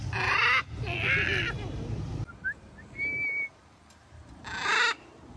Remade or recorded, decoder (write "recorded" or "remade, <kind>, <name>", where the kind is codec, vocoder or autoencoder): recorded